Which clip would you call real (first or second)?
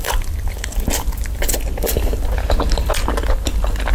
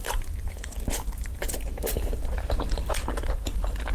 first